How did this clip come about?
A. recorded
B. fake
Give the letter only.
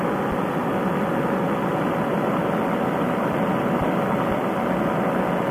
A